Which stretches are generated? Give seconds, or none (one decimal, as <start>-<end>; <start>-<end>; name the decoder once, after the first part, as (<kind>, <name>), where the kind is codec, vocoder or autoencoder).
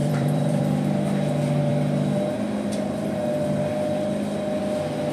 0.0-0.6 (vocoder, BigVGAN v2)